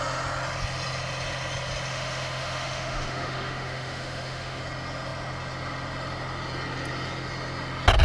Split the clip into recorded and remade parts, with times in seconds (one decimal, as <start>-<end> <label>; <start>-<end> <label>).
0.0-1.9 recorded; 1.9-4.6 remade; 4.6-8.0 recorded